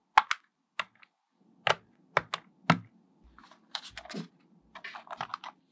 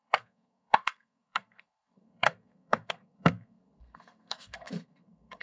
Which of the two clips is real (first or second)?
first